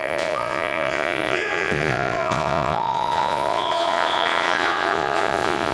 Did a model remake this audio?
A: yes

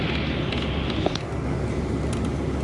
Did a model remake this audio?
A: no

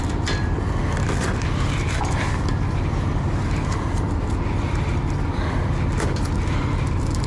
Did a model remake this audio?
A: no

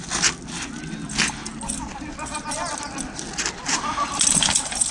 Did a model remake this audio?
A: no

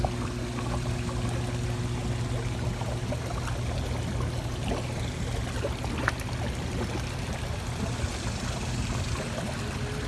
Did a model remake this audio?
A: no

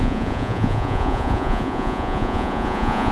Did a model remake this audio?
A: yes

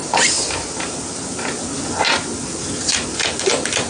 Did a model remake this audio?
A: no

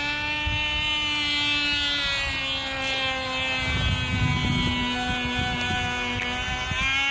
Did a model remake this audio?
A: no